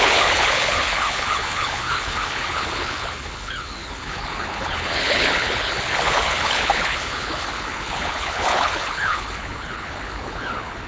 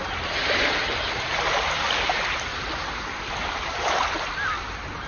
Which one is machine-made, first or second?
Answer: first